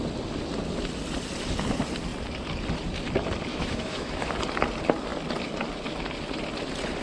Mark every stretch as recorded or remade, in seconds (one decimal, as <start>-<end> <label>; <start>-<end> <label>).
0.0-3.5 recorded; 3.5-4.3 remade; 4.3-7.0 recorded